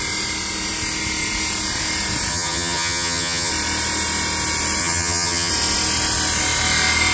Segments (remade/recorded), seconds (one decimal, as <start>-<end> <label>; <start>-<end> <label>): 0.0-2.3 recorded; 2.3-3.5 remade; 3.5-4.8 recorded; 4.8-5.5 remade; 5.5-7.1 recorded